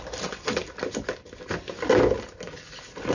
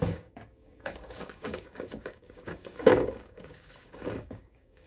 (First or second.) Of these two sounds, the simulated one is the second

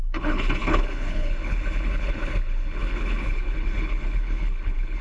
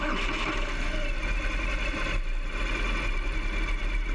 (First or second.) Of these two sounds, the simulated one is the first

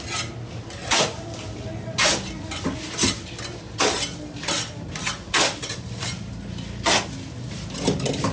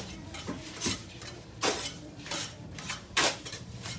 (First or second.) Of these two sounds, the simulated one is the second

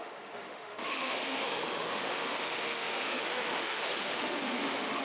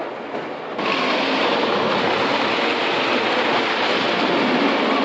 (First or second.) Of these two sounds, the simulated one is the first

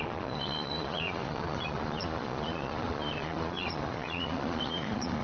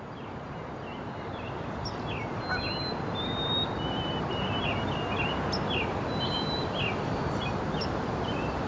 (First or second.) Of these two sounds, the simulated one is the first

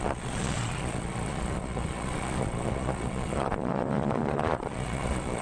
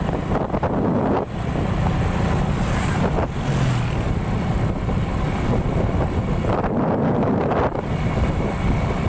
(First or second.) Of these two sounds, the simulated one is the first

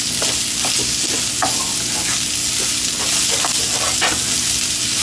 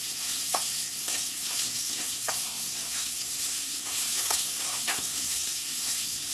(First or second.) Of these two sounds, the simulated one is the second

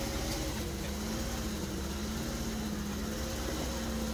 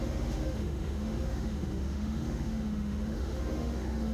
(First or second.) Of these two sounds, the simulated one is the second